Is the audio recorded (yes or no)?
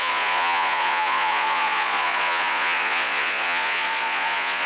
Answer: no